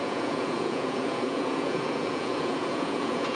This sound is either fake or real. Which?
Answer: fake